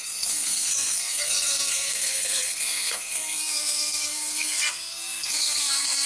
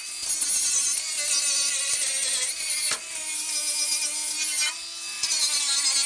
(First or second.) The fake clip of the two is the first